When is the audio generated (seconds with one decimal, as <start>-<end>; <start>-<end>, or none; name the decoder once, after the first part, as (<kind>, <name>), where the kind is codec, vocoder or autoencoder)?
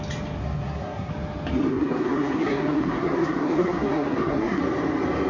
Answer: 0.4-1.1 (codec, SNAC); 1.7-4.6